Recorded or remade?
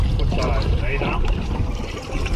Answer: remade